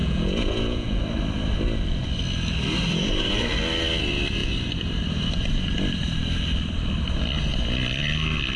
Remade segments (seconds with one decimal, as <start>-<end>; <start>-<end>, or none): 0.0-1.0